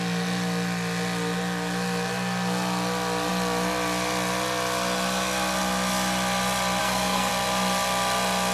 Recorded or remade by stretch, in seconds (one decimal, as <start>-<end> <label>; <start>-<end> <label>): 0.0-6.8 recorded; 6.8-7.3 remade; 7.3-8.5 recorded